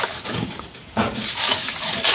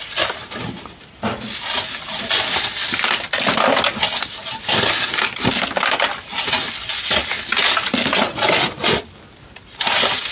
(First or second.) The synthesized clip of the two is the first